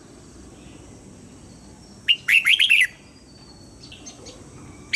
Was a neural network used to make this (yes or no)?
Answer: no